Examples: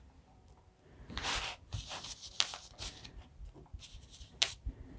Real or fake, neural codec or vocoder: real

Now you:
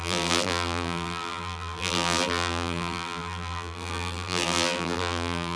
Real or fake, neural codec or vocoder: fake, vocoder, BigVGAN v2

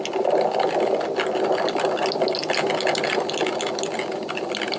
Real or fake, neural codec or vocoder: real